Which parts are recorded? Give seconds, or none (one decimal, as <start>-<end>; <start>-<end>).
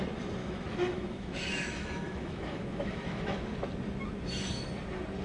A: 0.0-0.4; 3.5-5.2